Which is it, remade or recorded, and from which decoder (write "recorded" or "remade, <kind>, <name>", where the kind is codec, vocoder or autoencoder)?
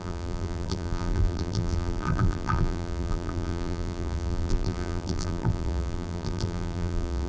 remade, vocoder, BigVGAN v2